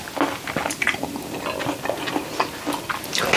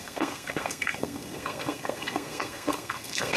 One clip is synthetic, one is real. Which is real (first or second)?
first